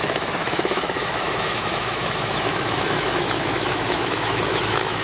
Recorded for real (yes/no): no